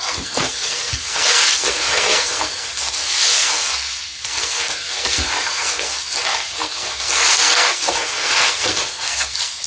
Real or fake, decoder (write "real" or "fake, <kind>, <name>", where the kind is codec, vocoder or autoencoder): fake, codec, SNAC